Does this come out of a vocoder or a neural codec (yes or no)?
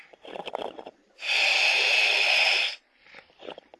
no